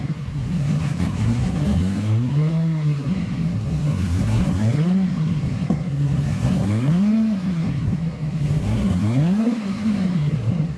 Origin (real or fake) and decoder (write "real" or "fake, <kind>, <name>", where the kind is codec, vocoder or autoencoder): fake, codec, SNAC